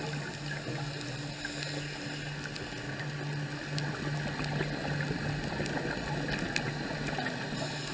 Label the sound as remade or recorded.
recorded